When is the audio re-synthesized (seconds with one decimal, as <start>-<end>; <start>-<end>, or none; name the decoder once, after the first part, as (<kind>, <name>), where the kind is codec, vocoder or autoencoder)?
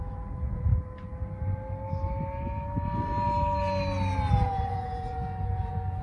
0.0-0.7 (vocoder, Vocos); 4.3-6.0